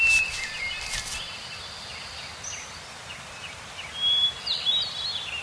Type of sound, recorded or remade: recorded